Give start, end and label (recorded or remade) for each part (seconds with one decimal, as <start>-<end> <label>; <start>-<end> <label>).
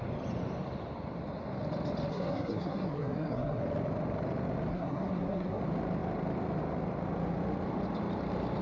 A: 0.0-2.1 recorded; 2.1-3.6 remade; 3.6-4.7 recorded; 4.7-5.6 remade; 5.6-8.6 recorded